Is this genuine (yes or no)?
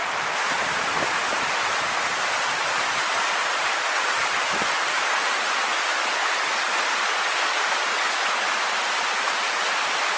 yes